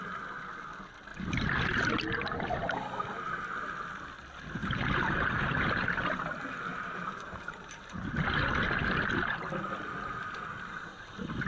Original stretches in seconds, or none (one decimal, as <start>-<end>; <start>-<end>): 0.0-1.1; 1.9-4.6; 6.2-6.7; 8.2-11.5

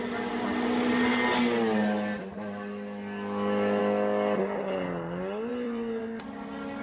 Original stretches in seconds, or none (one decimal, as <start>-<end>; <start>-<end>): 0.0-5.5; 6.0-6.8

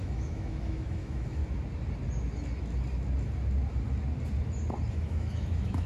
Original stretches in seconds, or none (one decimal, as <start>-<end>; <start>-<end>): 1.4-4.9